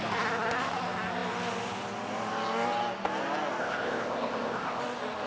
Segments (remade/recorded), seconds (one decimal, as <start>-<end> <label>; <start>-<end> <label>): 0.0-3.6 recorded; 3.6-4.8 remade; 4.8-5.3 recorded